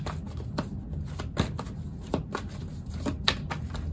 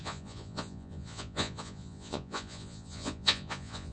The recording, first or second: first